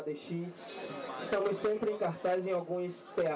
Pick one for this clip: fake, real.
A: real